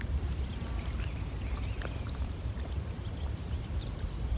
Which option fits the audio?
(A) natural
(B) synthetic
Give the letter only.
B